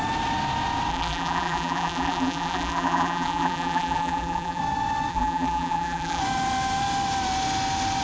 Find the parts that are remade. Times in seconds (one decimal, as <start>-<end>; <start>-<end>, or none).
0.9-4.6; 5.1-6.2